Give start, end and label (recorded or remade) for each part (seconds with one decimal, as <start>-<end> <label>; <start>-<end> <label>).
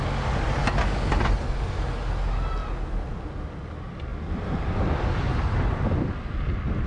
0.0-6.9 recorded